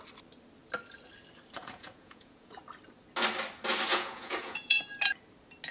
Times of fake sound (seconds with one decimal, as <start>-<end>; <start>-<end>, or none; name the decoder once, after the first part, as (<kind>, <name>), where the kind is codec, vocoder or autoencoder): 1.6-2.6 (vocoder, Vocos); 3.9-4.8